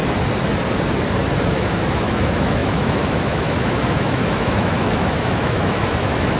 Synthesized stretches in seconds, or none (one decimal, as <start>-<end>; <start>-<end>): 1.4-6.4